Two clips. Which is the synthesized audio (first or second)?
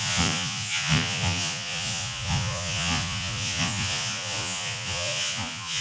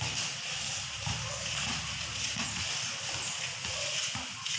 first